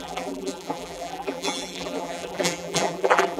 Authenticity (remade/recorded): remade